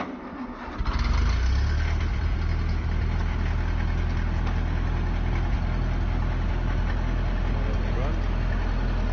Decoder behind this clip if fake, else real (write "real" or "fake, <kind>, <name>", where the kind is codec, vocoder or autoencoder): real